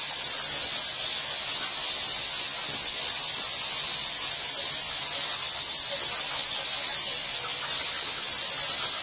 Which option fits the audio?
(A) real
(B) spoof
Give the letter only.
A